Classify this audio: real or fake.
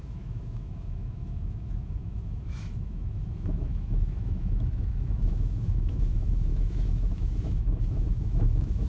fake